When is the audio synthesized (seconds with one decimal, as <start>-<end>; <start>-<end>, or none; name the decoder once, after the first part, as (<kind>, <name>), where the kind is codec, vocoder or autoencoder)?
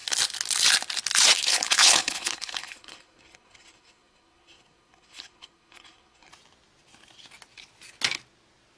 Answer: 1.3-6.3 (codec, HILCodec)